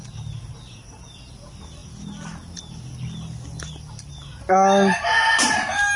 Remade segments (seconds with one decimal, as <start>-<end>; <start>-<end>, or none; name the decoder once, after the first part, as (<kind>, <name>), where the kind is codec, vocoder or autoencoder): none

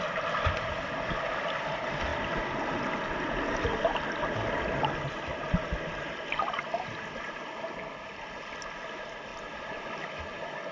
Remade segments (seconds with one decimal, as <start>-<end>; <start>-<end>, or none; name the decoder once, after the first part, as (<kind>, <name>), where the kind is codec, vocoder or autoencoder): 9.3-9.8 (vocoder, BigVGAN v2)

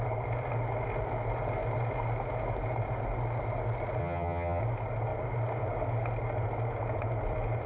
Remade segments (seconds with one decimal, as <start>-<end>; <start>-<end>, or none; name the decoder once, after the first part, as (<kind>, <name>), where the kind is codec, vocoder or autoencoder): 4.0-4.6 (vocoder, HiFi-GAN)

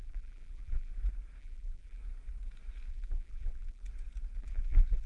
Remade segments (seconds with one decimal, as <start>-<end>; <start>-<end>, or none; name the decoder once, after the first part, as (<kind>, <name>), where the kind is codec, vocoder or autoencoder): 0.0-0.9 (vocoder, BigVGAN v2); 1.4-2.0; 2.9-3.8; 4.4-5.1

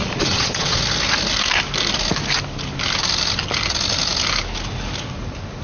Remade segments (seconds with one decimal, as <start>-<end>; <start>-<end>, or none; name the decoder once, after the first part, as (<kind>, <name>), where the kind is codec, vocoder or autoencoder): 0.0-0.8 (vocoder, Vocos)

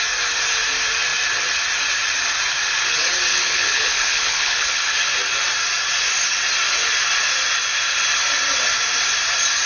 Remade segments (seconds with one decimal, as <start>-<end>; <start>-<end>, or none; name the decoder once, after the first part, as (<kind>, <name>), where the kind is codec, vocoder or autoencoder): 3.3-4.9 (codec, HILCodec)

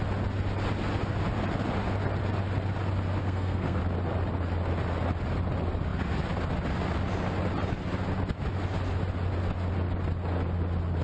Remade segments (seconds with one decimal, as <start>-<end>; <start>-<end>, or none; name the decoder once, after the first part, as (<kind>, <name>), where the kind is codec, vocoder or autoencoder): 3.2-3.8 (codec, SNAC)

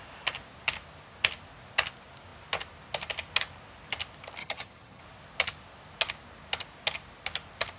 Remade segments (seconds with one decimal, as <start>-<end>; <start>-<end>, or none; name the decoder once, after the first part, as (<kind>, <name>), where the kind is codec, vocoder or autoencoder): 4.4-5.0 (vocoder, HiFi-GAN)